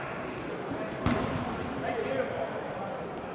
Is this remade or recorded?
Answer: remade